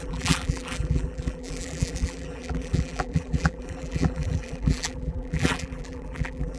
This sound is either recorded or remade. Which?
remade